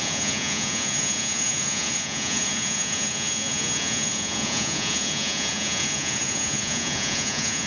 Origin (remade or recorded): remade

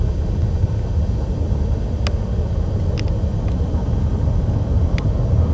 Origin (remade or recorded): recorded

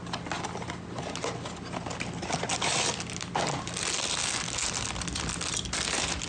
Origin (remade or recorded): recorded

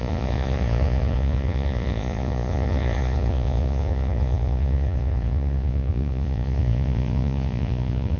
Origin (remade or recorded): remade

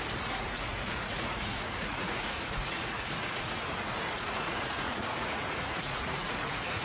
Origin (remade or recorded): remade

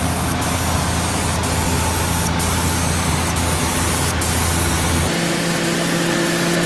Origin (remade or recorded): recorded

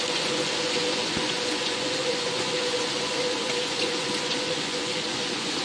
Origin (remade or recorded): remade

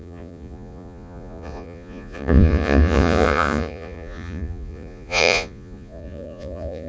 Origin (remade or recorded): remade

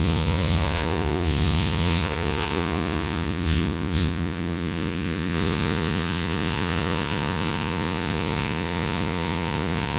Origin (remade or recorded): remade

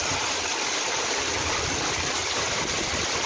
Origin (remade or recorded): recorded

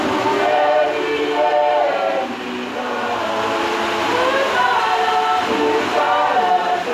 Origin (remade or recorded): recorded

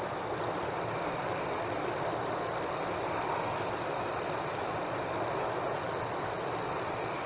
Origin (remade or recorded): recorded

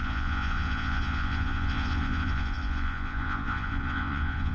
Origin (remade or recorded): remade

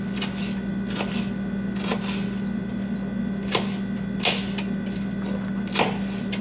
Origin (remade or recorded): recorded